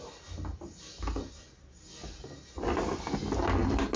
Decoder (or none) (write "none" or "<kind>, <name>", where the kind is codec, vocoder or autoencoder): none